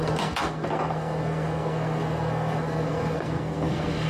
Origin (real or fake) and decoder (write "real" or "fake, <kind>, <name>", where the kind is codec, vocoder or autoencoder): fake, codec, SNAC